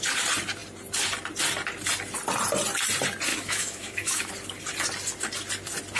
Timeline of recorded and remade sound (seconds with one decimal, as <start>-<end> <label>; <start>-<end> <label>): 0.0-3.3 recorded; 3.3-4.3 remade; 4.3-6.0 recorded